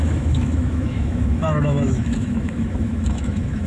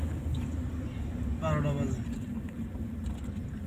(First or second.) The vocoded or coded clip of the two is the first